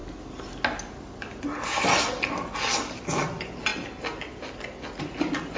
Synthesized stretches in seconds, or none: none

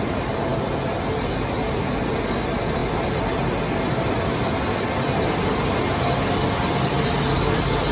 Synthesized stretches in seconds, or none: none

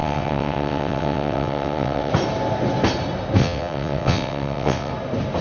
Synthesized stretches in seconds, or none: 0.0-2.1 (vocoder, WaveNeXt); 3.4-4.9